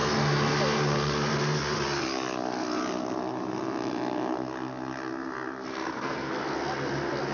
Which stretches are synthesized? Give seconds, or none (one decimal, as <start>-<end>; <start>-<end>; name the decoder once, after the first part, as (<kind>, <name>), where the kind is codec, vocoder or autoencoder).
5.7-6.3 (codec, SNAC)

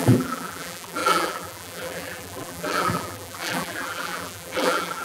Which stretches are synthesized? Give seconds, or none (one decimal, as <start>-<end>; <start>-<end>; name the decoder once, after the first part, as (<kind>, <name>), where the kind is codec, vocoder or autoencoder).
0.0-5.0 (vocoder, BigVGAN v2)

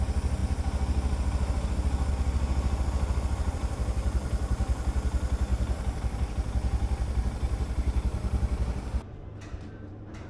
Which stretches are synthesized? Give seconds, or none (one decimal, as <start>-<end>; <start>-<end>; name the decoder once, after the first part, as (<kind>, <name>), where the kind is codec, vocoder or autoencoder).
5.5-10.3 (vocoder, BigVGAN v2)

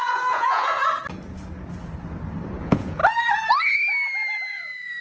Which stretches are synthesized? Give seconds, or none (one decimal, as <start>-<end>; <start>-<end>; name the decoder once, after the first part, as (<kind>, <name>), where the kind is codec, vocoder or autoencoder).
0.0-0.8 (vocoder, Vocos); 2.6-3.0; 4.5-5.0

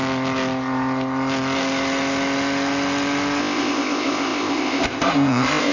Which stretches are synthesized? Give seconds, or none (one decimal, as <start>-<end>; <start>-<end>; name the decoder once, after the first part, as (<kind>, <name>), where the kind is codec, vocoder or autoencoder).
3.4-5.7 (codec, ZipCodec)

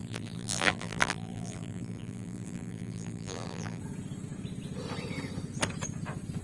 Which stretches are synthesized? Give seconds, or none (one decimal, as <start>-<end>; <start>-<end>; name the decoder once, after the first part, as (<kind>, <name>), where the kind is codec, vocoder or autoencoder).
0.0-3.8 (vocoder, BigVGAN v2)

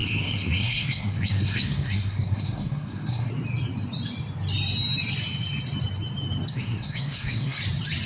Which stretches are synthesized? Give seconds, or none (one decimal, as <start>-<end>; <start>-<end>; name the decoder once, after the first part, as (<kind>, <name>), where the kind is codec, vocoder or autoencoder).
0.0-3.3 (codec, SNAC); 6.5-7.6